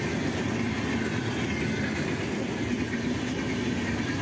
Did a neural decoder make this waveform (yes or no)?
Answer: no